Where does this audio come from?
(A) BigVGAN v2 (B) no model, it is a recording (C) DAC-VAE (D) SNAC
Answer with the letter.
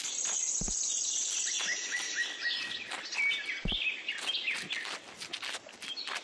B